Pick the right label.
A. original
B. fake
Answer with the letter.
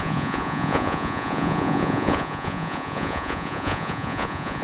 B